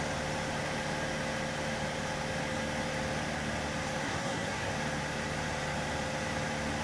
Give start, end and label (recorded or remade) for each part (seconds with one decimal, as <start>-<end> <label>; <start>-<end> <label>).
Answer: 0.0-4.0 recorded; 4.0-4.7 remade; 4.7-6.8 recorded